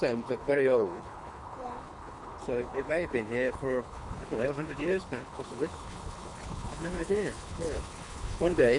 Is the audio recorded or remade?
remade